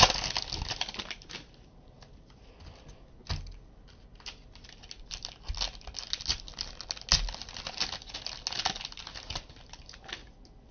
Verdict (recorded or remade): recorded